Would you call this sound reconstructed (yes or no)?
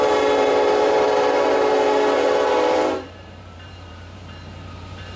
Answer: yes